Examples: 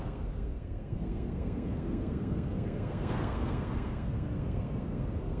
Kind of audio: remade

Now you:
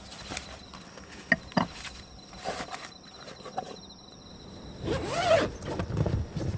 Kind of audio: recorded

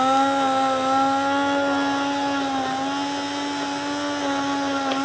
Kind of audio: recorded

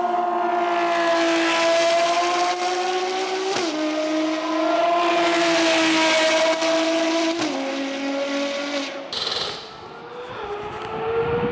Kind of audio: recorded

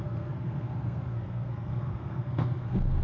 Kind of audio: remade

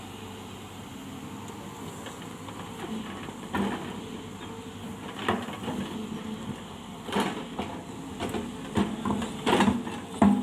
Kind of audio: recorded